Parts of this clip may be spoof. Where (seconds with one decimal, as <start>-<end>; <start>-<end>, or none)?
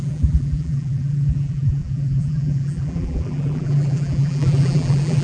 0.0-5.2